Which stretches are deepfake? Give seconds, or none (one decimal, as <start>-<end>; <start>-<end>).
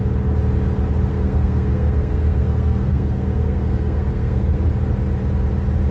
1.1-4.6